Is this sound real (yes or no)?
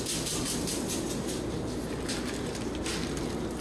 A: yes